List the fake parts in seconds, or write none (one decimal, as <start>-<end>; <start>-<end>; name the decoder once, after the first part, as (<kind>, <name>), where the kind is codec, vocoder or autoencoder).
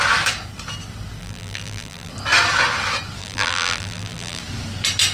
1.2-2.1 (vocoder, BigVGAN v2); 3.2-4.4